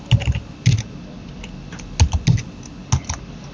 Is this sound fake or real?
real